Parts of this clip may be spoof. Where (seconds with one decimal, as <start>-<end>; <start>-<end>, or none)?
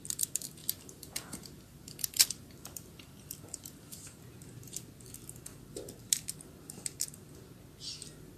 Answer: 0.6-4.2